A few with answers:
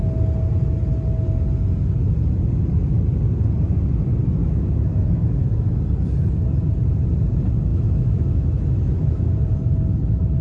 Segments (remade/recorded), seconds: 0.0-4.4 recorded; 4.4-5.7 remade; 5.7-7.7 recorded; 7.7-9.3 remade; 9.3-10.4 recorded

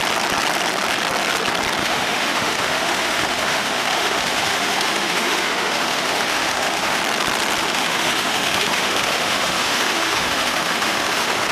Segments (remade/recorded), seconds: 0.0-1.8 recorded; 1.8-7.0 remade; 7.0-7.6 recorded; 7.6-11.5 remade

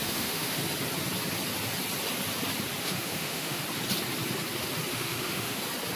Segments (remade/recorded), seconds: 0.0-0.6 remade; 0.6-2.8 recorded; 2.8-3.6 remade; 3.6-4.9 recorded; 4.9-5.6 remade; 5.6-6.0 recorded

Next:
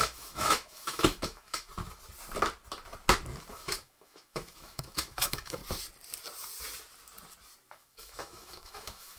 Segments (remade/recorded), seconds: 0.0-1.7 remade; 1.7-3.5 recorded; 3.5-5.6 remade; 5.6-7.7 recorded; 7.7-9.2 remade

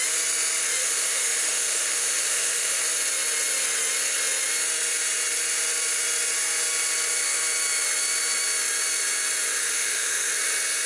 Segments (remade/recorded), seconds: 0.0-0.8 recorded; 0.8-2.8 remade; 2.8-9.6 recorded; 9.6-10.3 remade; 10.3-10.9 recorded

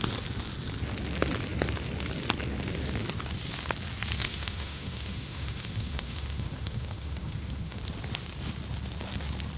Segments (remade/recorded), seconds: 0.0-4.2 recorded; 4.2-7.8 remade; 7.8-9.6 recorded

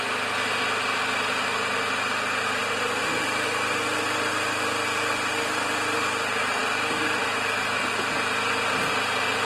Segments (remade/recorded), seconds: 0.0-7.2 recorded; 7.2-7.8 remade; 7.8-9.5 recorded

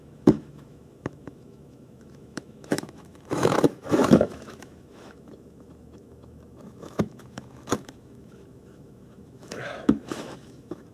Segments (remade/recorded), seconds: 0.0-10.9 remade